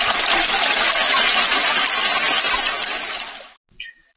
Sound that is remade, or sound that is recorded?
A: recorded